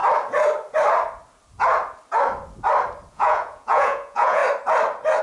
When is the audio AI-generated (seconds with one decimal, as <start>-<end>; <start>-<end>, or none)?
3.1-4.4